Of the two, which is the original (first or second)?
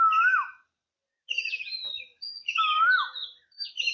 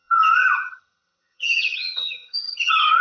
first